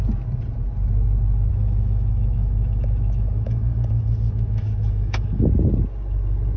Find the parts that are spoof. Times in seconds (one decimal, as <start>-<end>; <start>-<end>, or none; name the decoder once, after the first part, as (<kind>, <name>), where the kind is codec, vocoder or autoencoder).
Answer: 1.5-5.5 (autoencoder, DAC-VAE)

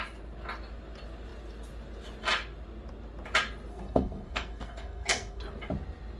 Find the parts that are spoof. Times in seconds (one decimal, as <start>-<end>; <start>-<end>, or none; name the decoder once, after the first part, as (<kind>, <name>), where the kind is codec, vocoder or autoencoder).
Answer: 3.7-5.4 (codec, SNAC)

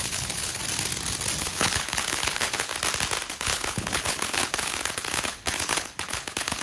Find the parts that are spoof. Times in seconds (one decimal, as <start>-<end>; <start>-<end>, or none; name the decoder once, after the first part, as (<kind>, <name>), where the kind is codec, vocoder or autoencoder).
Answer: 0.0-0.6 (codec, HILCodec); 1.4-2.7; 3.3-6.6